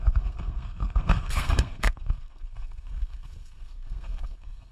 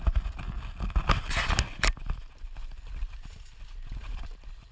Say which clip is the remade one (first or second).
first